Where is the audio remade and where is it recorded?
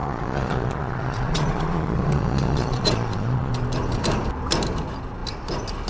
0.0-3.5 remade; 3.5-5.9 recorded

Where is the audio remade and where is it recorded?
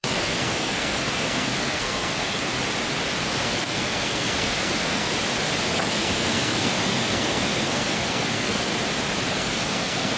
0.0-2.5 remade; 2.5-3.2 recorded; 3.2-5.1 remade; 5.1-5.7 recorded; 5.7-8.7 remade; 8.7-9.3 recorded; 9.3-10.2 remade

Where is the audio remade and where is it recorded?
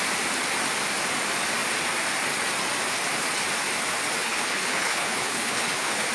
0.0-4.2 recorded; 4.2-6.1 remade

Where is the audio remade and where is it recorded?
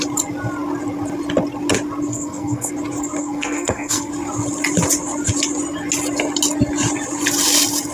0.0-2.1 recorded; 2.1-2.7 remade; 2.7-3.2 recorded; 3.2-4.1 remade; 4.1-7.9 recorded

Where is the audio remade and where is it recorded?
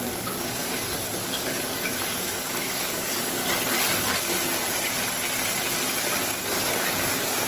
0.0-3.4 remade; 3.4-6.5 recorded; 6.5-7.5 remade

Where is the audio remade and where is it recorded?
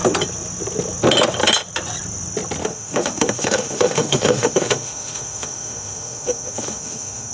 0.0-2.6 recorded; 2.6-7.3 remade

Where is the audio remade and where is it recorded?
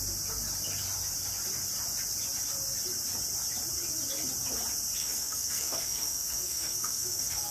0.0-5.0 recorded; 5.0-7.5 remade